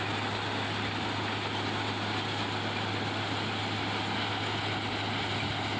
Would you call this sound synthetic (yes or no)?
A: no